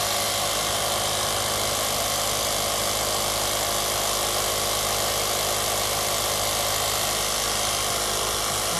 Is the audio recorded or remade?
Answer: recorded